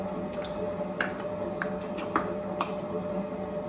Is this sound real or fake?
real